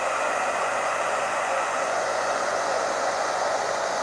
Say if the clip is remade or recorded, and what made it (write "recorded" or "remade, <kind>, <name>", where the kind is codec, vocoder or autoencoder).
remade, vocoder, Vocos